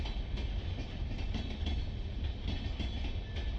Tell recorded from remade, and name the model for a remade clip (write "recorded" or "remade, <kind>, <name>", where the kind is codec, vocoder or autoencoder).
recorded